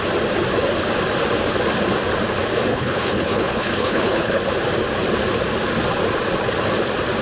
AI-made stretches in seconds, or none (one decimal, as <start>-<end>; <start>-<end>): 2.7-4.4